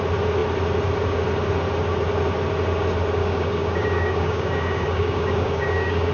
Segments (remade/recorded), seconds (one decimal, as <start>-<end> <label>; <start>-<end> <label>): 0.0-3.2 recorded; 3.2-6.1 remade